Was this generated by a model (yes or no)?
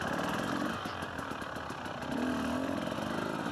no